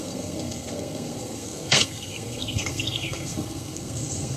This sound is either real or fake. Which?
fake